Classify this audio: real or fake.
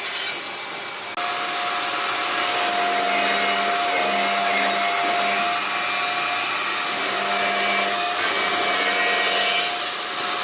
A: real